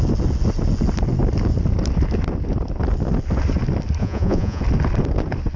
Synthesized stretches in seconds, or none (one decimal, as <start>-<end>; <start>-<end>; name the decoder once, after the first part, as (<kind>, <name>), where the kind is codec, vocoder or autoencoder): 4.0-4.6 (vocoder, Vocos)